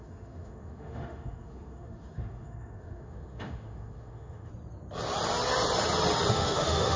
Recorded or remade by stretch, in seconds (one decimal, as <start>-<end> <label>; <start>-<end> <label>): 0.0-4.5 remade; 4.5-6.3 recorded; 6.3-7.0 remade